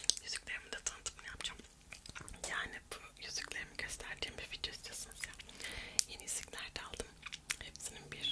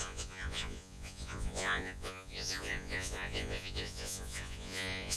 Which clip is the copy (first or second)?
second